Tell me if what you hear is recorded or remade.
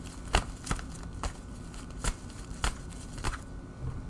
recorded